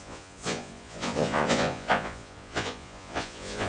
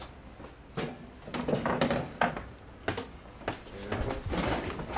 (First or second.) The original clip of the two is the second